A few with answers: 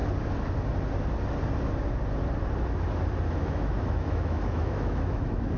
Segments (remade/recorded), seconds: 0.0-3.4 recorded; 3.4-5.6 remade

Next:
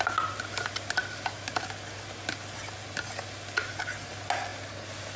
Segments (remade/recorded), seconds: 0.0-5.2 recorded

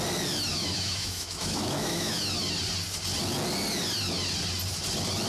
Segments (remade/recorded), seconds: 0.0-0.5 recorded; 0.5-2.2 remade; 2.2-5.3 recorded

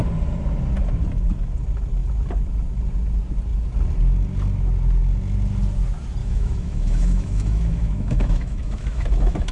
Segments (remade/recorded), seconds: 0.0-6.2 recorded; 6.2-9.5 remade

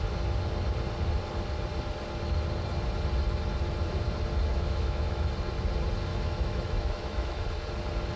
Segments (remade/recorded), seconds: 0.0-4.5 recorded; 4.5-5.3 remade; 5.3-6.1 recorded; 6.1-7.4 remade; 7.4-8.2 recorded